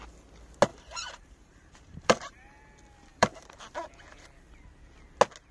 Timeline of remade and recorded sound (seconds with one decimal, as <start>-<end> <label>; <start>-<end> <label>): 0.0-0.7 recorded; 0.7-2.6 remade; 2.6-3.1 recorded; 3.1-3.7 remade; 3.7-5.5 recorded